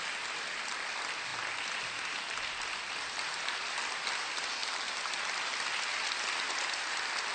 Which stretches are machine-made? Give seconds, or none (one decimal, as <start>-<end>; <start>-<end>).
none